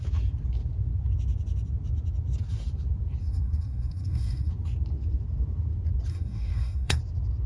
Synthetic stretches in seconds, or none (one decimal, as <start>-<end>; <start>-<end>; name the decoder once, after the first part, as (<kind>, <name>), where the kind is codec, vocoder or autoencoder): 3.2-4.5 (codec, SNAC); 6.1-7.0